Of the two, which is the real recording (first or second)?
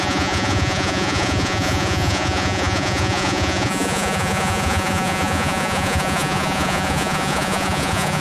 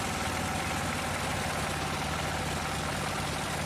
second